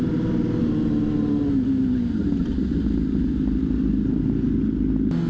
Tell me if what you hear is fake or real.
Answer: real